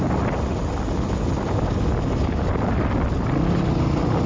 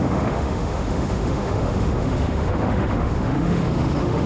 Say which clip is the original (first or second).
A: first